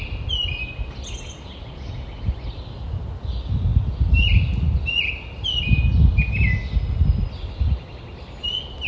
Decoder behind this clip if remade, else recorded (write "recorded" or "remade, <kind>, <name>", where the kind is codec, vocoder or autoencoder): recorded